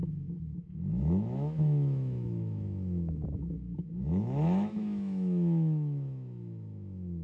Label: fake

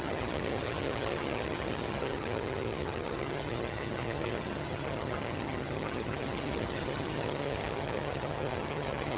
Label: fake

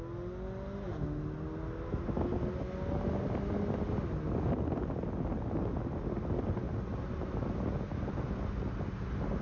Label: real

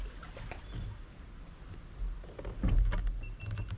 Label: real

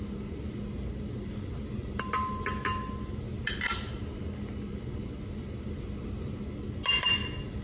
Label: real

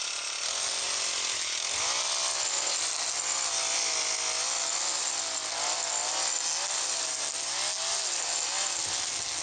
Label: real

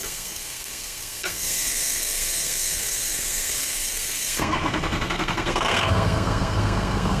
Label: fake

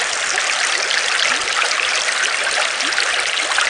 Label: real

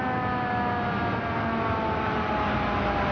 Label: real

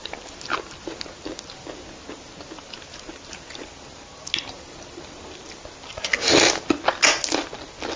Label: real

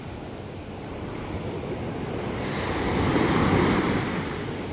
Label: real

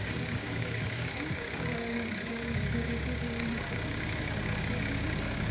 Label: fake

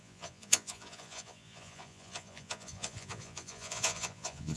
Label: fake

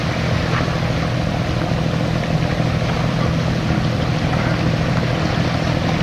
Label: real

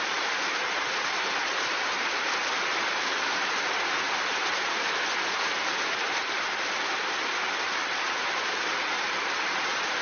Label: fake